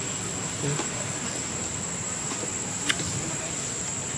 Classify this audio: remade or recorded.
recorded